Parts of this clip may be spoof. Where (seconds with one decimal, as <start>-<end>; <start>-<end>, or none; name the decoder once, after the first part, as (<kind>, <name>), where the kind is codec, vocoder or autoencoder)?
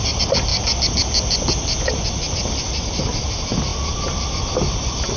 0.0-0.5 (vocoder, BigVGAN v2); 2.3-5.2